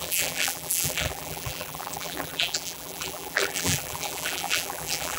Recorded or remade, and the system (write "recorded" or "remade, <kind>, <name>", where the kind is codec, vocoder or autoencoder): remade, vocoder, BigVGAN v2